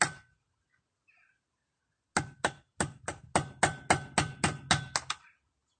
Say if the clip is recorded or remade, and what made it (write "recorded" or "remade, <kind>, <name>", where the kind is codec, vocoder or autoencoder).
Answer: recorded